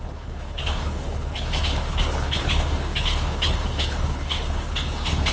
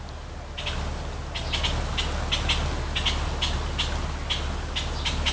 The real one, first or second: second